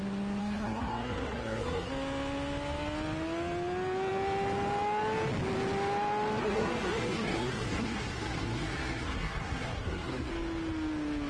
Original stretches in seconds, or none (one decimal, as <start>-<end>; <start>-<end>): 0.0-0.4; 1.9-6.4; 10.3-11.3

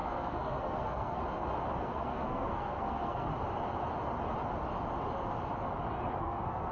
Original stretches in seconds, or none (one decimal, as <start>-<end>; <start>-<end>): 1.2-1.8; 3.3-6.2

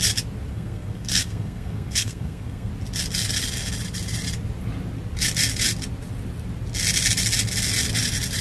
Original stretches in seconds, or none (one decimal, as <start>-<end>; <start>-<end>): 0.0-0.5; 2.7-8.4

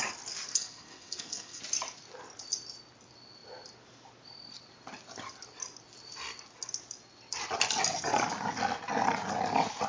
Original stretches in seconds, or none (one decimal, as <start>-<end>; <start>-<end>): 0.0-0.5; 1.6-9.9

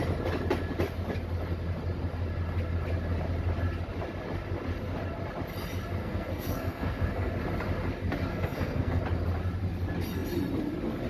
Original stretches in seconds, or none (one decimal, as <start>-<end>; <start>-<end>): 0.0-6.0; 7.3-8.3; 9.0-11.1

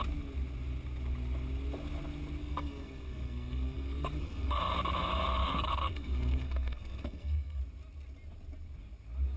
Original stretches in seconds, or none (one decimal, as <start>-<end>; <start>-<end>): 0.0-2.4; 4.6-5.4; 7.6-9.4

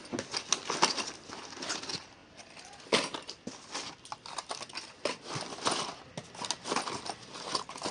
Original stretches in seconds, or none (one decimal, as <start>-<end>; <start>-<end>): 0.0-7.9

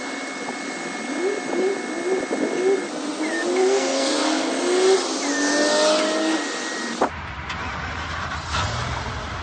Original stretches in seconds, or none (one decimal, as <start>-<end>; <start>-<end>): 0.0-3.6; 4.5-9.4